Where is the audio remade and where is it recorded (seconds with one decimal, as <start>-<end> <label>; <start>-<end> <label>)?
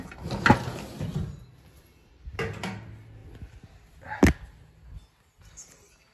0.0-6.1 recorded